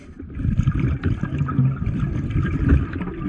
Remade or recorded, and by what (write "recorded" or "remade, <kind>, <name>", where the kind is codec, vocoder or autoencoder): recorded